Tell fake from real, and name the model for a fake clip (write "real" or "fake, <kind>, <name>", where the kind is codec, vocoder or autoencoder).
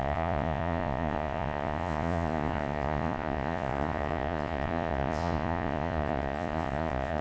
fake, vocoder, Vocos